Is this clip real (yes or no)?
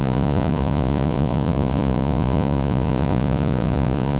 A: no